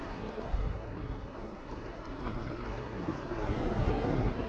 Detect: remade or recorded remade